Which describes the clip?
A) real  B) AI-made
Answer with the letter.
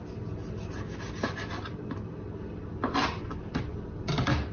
A